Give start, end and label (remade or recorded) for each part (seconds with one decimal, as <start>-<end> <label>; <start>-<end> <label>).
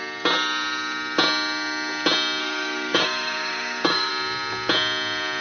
0.0-2.4 recorded; 2.4-4.1 remade; 4.1-5.4 recorded